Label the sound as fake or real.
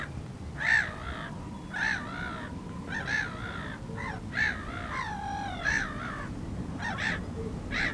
real